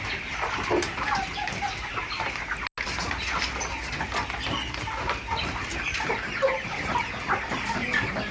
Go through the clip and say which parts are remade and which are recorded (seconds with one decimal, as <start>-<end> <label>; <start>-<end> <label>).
0.0-8.3 recorded